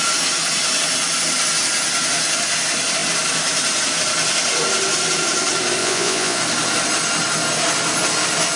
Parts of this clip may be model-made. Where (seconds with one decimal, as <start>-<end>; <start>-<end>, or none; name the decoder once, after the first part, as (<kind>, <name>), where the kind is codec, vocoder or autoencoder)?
5.8-6.4 (vocoder, Vocos)